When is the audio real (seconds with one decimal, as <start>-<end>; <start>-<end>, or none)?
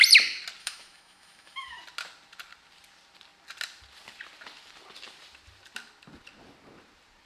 0.0-0.6; 1.8-7.3